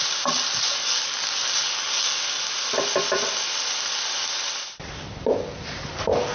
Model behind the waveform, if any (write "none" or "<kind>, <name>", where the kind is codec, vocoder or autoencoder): none